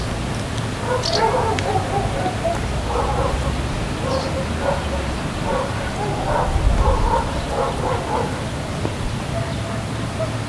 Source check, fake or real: real